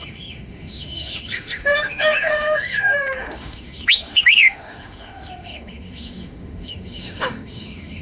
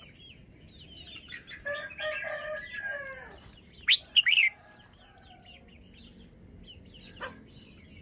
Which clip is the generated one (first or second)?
first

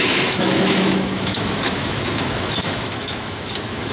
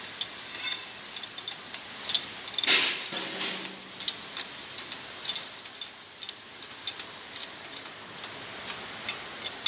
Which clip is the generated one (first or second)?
first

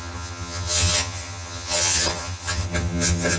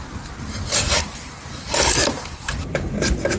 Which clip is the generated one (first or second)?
first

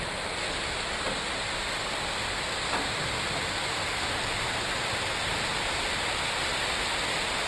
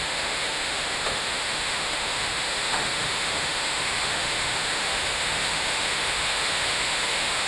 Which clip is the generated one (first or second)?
second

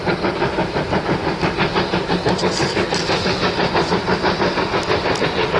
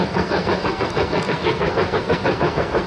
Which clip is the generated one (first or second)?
second